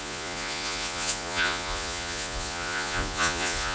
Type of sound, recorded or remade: remade